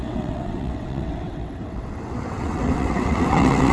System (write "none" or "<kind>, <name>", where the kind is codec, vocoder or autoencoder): vocoder, WaveNeXt